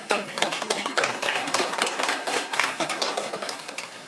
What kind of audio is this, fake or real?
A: fake